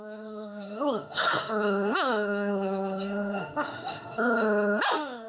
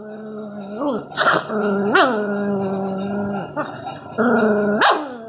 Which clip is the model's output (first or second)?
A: first